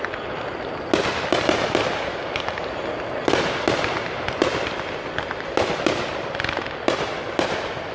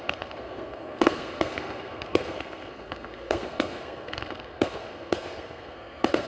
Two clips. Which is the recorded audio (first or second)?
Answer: first